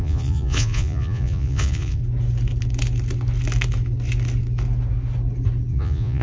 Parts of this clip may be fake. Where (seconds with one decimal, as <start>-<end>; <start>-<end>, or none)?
0.0-2.0; 5.7-6.2